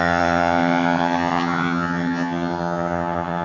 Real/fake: fake